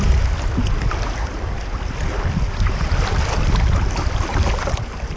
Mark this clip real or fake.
real